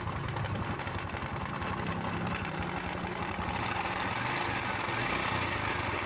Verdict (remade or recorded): recorded